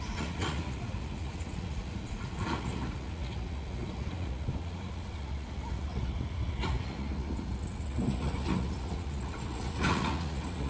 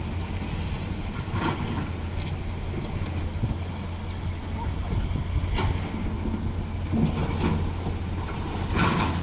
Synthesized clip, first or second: first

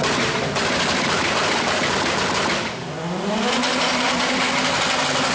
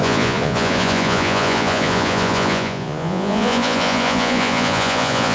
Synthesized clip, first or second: second